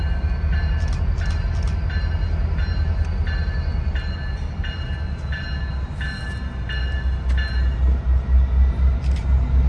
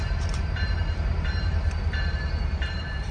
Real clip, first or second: first